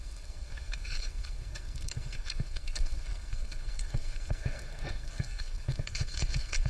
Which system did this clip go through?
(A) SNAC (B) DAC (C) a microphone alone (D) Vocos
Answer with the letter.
A